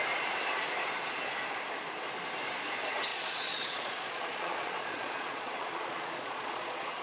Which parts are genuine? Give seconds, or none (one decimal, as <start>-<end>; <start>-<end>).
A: 0.0-3.1